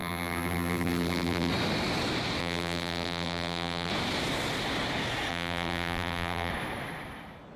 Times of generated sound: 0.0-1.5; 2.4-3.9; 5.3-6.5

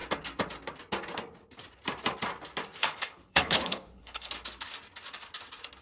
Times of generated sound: 2.8-4.3

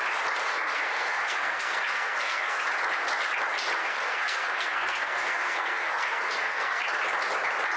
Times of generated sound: 0.4-2.6; 3.8-6.8

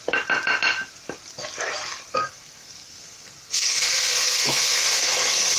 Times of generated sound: 2.1-5.6